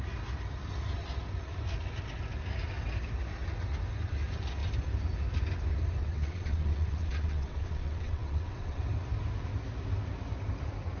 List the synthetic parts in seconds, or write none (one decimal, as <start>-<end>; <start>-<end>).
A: 6.0-8.8